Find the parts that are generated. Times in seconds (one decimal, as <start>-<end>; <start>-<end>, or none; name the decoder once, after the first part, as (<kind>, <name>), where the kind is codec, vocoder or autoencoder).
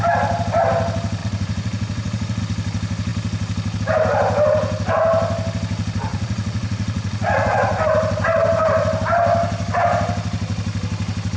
1.2-2.4 (vocoder, Vocos); 6.1-7.8